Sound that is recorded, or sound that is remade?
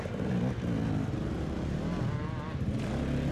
recorded